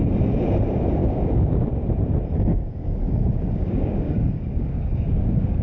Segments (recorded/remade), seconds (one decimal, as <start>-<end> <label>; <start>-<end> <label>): 0.0-1.0 recorded; 1.0-1.6 remade; 1.6-2.5 recorded; 2.5-5.6 remade